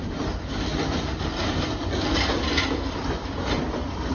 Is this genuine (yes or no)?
yes